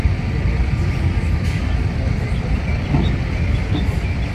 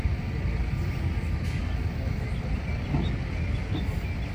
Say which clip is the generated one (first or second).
first